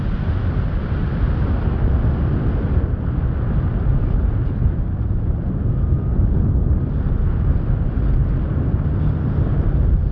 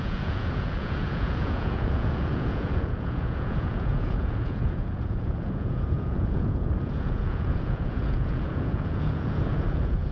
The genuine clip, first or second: first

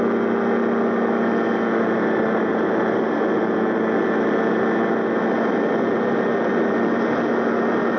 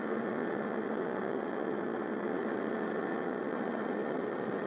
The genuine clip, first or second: first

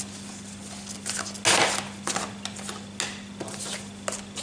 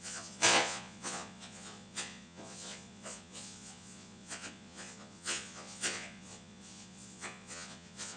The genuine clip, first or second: first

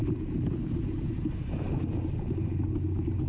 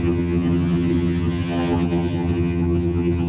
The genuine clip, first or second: first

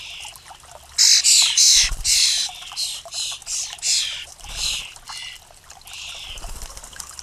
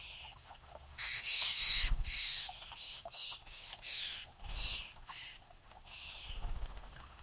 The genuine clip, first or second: first